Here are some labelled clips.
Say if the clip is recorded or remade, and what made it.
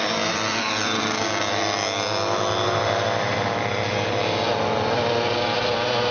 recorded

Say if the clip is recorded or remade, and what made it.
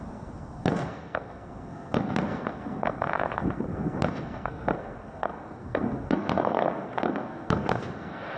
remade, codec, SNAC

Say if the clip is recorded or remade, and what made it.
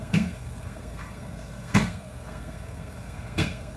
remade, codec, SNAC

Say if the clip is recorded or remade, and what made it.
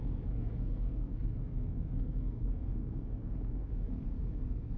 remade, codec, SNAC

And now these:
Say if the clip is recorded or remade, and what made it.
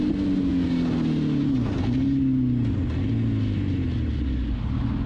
recorded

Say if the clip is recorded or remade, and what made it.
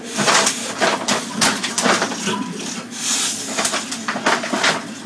recorded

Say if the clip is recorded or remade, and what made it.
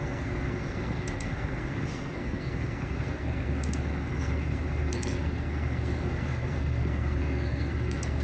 remade, codec, SNAC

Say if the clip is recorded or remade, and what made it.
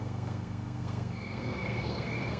remade, codec, SNAC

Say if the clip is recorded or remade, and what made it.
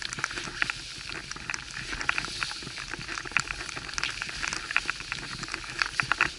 recorded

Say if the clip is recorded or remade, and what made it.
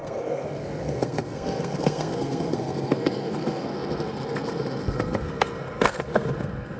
remade, codec, SNAC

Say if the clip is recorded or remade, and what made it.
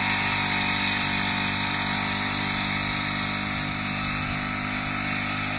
recorded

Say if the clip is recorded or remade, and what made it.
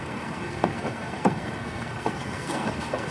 remade, codec, SNAC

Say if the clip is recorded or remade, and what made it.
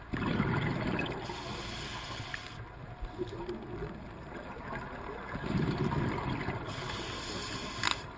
recorded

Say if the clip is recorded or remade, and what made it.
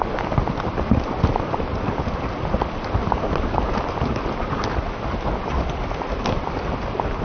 recorded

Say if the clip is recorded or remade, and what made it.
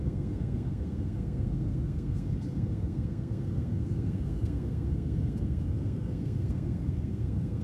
remade, codec, SNAC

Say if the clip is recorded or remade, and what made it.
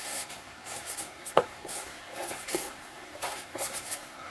remade, codec, SNAC